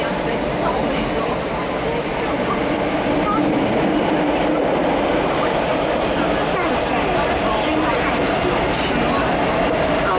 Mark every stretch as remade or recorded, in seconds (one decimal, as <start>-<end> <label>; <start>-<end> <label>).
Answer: 0.0-10.2 recorded